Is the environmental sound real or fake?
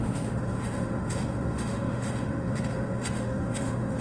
fake